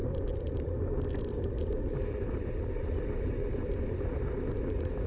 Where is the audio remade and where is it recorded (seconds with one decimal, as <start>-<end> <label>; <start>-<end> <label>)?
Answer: 0.0-0.7 remade; 0.7-1.6 recorded; 1.6-5.1 remade